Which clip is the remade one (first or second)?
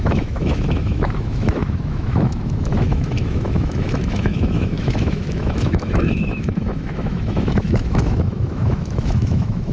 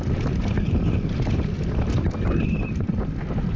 first